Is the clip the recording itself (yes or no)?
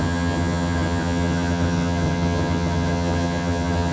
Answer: no